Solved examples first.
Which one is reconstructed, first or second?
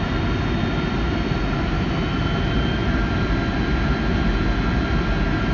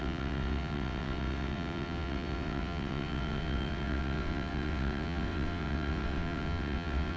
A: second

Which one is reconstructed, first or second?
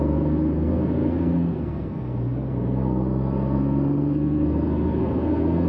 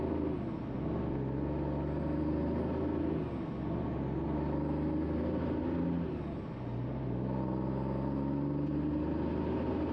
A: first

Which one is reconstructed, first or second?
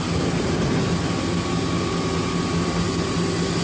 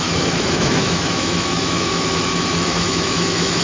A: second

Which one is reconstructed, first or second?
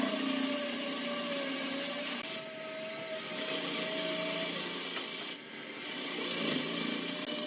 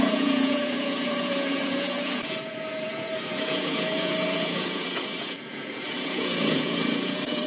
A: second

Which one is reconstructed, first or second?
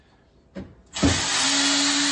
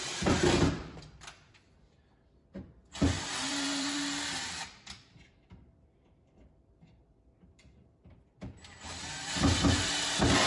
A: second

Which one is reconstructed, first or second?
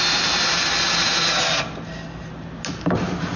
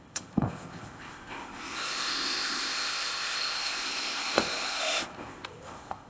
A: second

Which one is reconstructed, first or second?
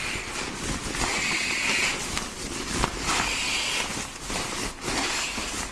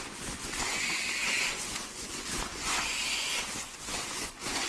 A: second